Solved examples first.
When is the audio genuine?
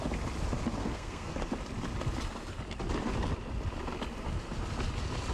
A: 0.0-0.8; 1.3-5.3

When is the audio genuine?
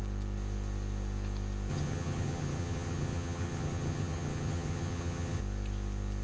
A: 0.0-1.7; 5.4-6.2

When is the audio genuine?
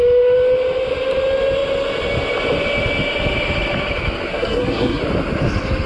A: 0.0-4.3; 5.0-5.9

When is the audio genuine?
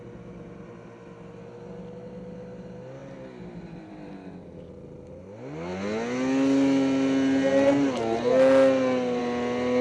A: 0.0-9.8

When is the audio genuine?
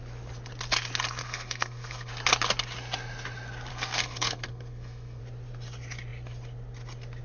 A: 0.0-1.2; 2.1-3.7; 5.2-7.2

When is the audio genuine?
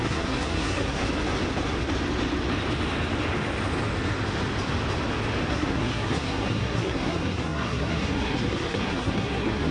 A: 1.0-5.5